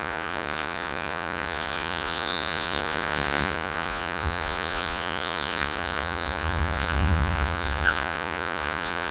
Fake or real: fake